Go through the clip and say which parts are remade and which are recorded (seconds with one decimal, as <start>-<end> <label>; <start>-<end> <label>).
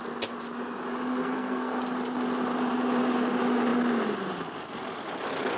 0.0-1.2 recorded; 1.2-1.8 remade; 1.8-5.6 recorded